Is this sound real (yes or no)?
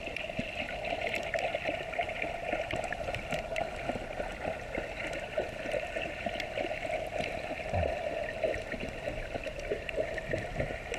yes